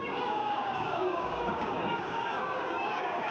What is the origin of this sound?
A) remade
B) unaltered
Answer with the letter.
A